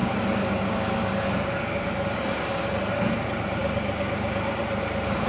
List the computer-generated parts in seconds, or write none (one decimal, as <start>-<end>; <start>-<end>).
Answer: 0.0-3.0; 3.6-4.6